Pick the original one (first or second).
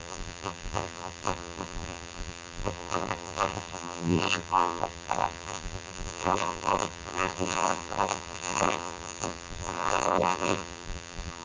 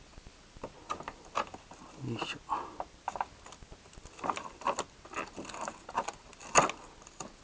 second